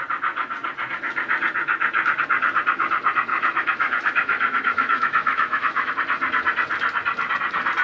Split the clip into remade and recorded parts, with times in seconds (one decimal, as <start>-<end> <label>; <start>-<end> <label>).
0.0-3.3 recorded; 3.3-5.9 remade; 5.9-7.8 recorded